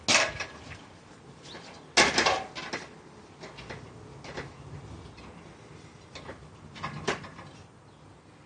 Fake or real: real